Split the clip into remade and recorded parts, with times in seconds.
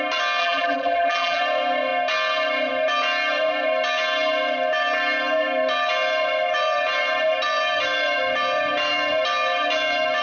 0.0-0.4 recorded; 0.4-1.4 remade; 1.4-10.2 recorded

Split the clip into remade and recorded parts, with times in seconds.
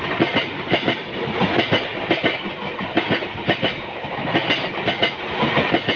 0.0-6.0 recorded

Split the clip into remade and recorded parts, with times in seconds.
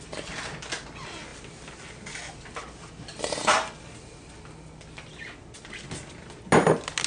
0.0-7.1 recorded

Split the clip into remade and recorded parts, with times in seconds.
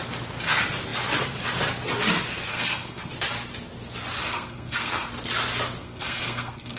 0.0-2.5 recorded; 2.5-3.1 remade; 3.1-4.2 recorded; 4.2-5.1 remade; 5.1-5.8 recorded; 5.8-6.8 remade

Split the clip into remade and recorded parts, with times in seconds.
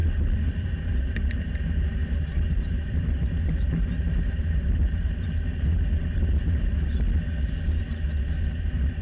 0.0-1.5 remade; 1.5-2.0 recorded; 2.0-7.1 remade; 7.1-9.0 recorded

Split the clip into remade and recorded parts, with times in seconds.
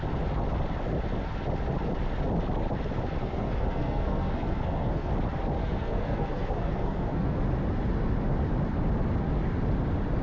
0.0-3.2 recorded; 3.2-5.1 remade; 5.1-5.6 recorded; 5.6-7.4 remade; 7.4-10.2 recorded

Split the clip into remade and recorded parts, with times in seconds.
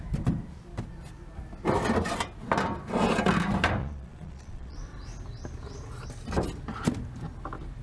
0.0-3.8 recorded; 3.8-4.8 remade; 4.8-7.8 recorded